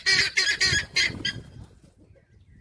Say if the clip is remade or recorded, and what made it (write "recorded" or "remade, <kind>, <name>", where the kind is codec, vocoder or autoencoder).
recorded